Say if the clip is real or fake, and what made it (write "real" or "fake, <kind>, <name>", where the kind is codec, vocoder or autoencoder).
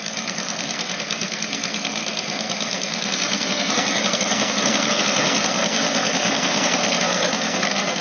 fake, codec, SNAC